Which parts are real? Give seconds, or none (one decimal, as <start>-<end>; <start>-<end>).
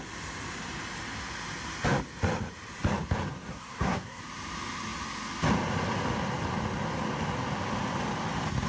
0.0-3.5; 4.2-8.7